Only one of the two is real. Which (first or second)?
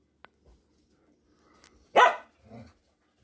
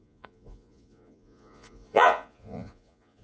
first